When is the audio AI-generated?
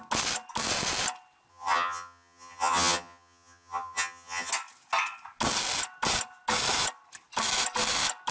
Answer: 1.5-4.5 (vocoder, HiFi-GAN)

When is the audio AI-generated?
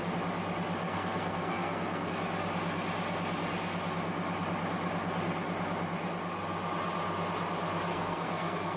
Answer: 0.8-2.1 (codec, SNAC); 7.9-8.8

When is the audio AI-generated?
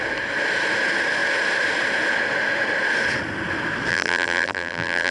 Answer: 3.9-5.1 (vocoder, BigVGAN v2)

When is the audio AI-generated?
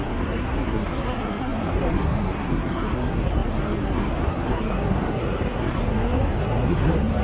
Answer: 0.0-7.2 (codec, SNAC)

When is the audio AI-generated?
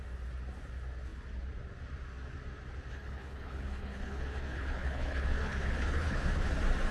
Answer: 2.9-6.5 (codec, HILCodec)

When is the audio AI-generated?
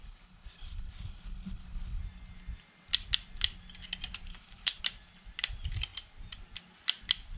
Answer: 0.0-2.0 (codec, HILCodec); 4.3-4.8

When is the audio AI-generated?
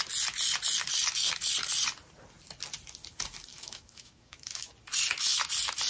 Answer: 3.5-4.7 (autoencoder, DAC-VAE)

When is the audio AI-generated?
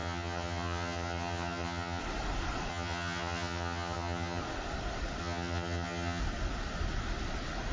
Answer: 0.0-2.0 (vocoder, HiFi-GAN); 2.7-4.4; 5.2-6.2